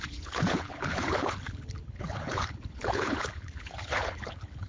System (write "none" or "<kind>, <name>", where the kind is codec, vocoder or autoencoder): codec, HILCodec